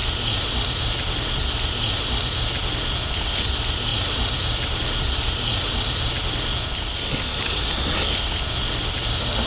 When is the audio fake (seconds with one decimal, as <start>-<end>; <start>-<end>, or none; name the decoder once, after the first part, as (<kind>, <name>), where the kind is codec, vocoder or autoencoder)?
3.9-6.1 (vocoder, BigVGAN v2)